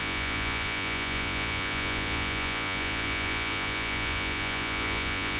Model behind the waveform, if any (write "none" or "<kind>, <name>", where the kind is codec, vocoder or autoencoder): vocoder, Vocos